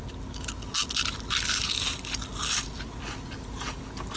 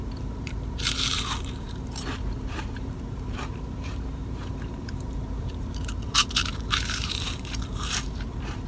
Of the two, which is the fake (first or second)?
second